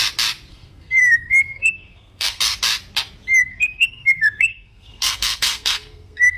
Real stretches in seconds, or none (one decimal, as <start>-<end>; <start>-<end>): 0.0-0.5; 2.4-3.4